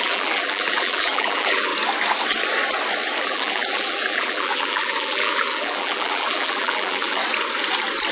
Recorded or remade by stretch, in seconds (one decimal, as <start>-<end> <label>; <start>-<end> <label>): 0.0-1.7 remade; 1.7-3.2 recorded; 3.2-7.2 remade; 7.2-8.1 recorded